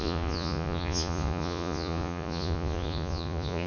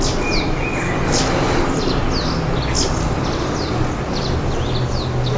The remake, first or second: first